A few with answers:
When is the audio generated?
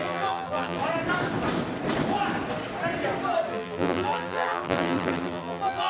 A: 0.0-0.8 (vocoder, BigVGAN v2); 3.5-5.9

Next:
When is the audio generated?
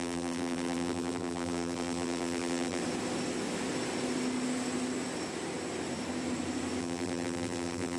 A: 0.0-2.8 (vocoder, BigVGAN v2); 6.8-8.0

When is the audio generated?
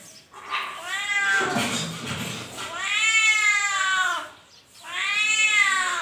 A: none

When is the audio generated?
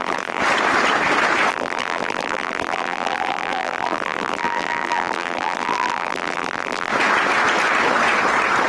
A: 0.0-0.4 (vocoder, BigVGAN v2); 1.5-6.9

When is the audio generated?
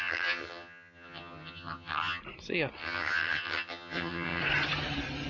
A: 0.0-2.2 (vocoder, HiFi-GAN); 2.8-4.4